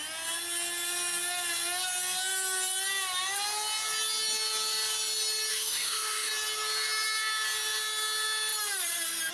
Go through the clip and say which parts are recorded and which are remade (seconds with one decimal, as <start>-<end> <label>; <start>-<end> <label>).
0.0-5.5 recorded; 5.5-6.3 remade; 6.3-9.3 recorded